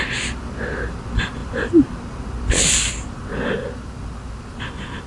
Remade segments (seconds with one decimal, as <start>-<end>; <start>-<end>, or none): none

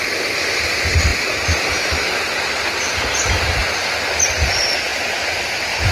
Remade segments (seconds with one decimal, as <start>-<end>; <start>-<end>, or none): 0.0-1.1; 1.7-3.6; 4.2-5.9

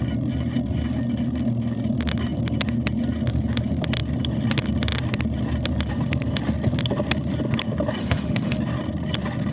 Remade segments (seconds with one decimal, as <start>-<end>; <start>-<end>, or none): 8.0-8.6

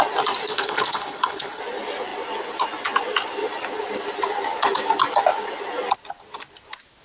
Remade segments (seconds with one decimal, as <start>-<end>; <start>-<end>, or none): 0.5-1.6

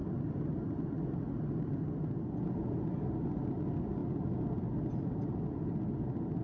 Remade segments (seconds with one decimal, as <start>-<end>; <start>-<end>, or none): none

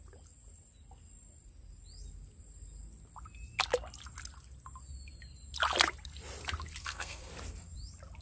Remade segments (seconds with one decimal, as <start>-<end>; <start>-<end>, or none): 6.8-7.3